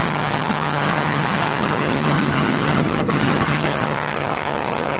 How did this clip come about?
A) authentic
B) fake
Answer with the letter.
B